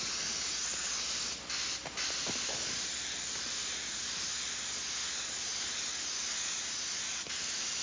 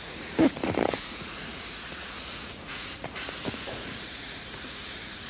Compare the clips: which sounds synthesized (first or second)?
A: second